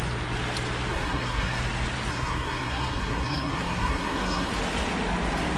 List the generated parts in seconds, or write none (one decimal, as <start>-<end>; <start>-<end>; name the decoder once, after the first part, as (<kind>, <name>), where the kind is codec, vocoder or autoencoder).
0.9-1.6 (codec, SNAC); 2.1-4.5